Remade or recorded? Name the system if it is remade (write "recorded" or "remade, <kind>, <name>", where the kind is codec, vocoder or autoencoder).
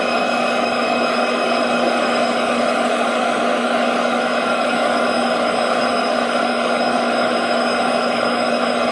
remade, codec, DAC